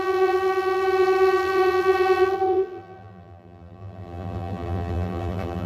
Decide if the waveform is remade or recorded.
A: remade